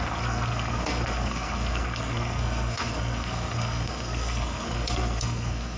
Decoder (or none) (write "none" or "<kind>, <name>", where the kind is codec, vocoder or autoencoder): codec, SNAC